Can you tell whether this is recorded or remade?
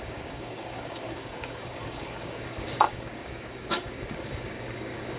remade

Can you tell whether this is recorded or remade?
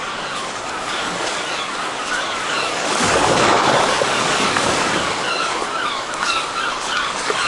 remade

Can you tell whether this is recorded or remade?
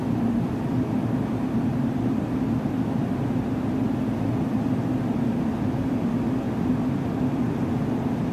recorded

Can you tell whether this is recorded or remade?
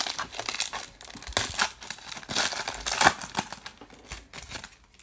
recorded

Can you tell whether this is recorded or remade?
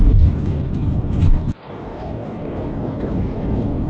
remade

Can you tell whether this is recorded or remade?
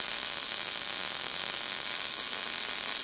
recorded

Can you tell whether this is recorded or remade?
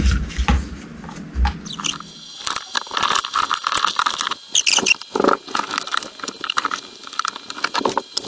recorded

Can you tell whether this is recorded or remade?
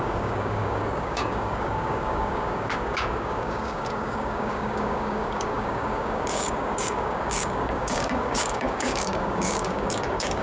remade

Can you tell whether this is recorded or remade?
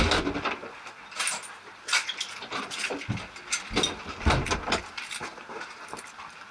recorded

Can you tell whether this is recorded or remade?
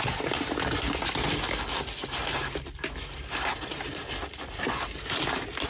recorded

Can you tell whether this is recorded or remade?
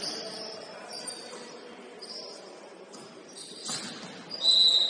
recorded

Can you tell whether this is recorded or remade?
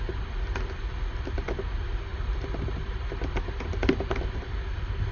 recorded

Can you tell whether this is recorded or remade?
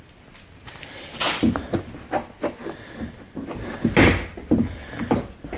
recorded